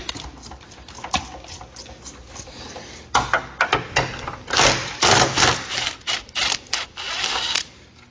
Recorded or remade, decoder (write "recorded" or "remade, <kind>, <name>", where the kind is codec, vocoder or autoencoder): recorded